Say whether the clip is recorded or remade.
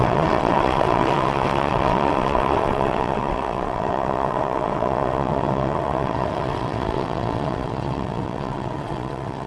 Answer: remade